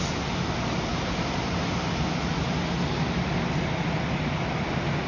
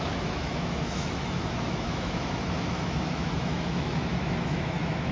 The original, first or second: first